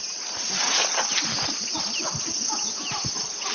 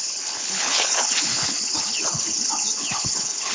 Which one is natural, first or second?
first